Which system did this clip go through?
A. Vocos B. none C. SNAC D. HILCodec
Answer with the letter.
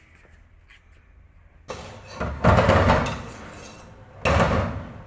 B